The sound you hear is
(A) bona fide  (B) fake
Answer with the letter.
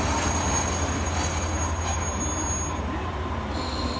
A